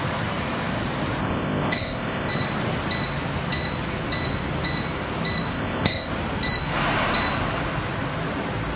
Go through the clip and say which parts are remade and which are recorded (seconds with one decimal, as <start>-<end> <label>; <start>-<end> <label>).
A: 0.0-1.2 recorded; 1.2-2.3 remade; 2.3-5.5 recorded; 5.5-6.1 remade; 6.1-8.8 recorded

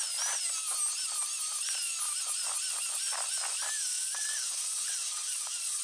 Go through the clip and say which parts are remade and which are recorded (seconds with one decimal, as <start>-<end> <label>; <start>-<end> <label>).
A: 0.0-3.8 recorded; 3.8-5.8 remade

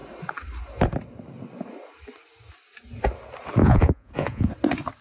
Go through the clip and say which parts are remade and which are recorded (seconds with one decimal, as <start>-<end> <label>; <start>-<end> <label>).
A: 0.0-3.6 recorded; 3.6-4.5 remade; 4.5-5.0 recorded